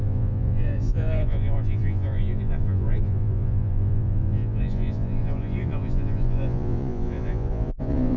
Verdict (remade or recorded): remade